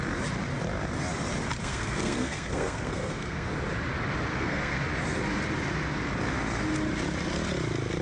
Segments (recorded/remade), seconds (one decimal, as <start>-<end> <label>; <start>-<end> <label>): 0.0-1.6 recorded; 1.6-3.5 remade; 3.5-4.3 recorded; 4.3-4.8 remade; 4.8-8.0 recorded